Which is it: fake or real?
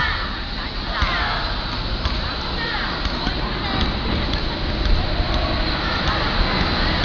real